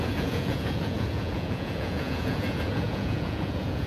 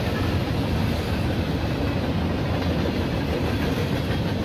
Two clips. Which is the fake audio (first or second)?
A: first